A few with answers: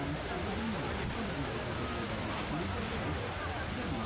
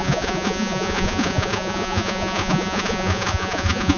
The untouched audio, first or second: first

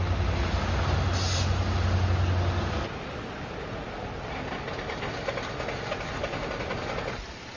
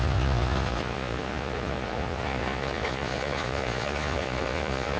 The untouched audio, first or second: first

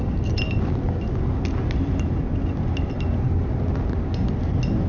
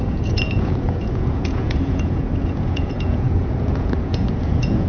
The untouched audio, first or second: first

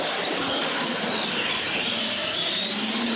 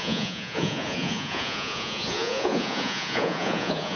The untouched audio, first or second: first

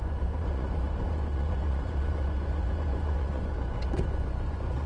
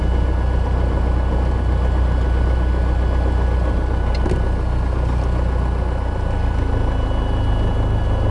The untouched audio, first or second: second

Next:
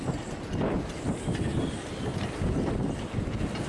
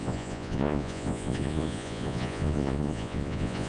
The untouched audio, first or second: first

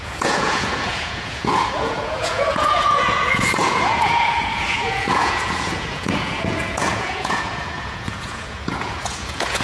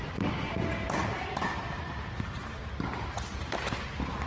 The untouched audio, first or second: second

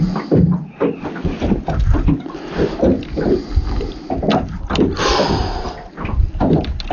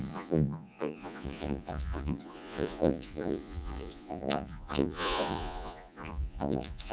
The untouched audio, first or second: first